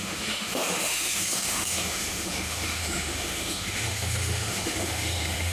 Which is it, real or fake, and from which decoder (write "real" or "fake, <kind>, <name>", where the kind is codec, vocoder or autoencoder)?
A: fake, autoencoder, DAC-VAE